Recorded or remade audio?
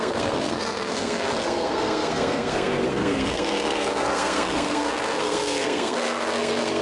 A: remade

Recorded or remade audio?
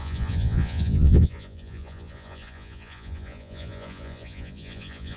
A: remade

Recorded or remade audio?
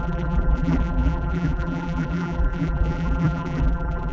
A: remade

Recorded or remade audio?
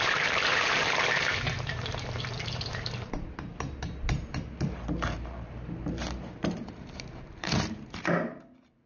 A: remade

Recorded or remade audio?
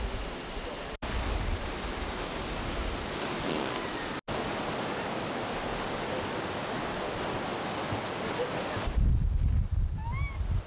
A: recorded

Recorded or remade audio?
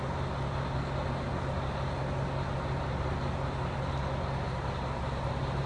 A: recorded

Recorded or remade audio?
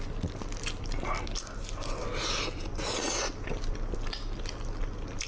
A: recorded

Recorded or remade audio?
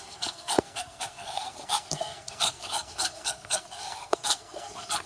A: remade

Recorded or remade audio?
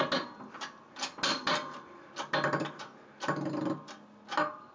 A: recorded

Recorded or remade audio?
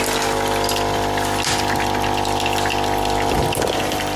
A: recorded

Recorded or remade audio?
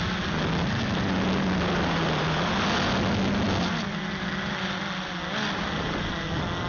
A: recorded